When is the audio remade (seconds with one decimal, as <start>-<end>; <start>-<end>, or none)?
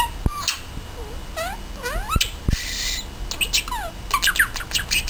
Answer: none